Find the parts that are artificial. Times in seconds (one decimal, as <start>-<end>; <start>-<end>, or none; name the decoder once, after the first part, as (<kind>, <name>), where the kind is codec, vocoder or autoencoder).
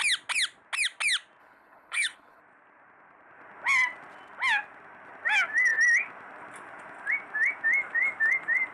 1.4-2.4 (codec, HILCodec)